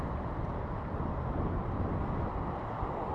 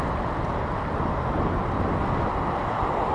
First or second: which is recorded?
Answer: second